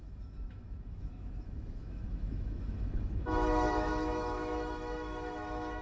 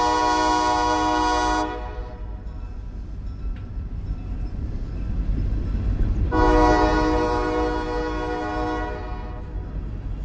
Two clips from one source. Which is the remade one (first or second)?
first